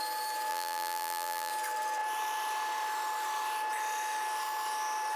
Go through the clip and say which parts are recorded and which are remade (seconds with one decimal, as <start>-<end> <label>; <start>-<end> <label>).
0.0-0.5 recorded; 0.5-1.5 remade; 1.5-5.2 recorded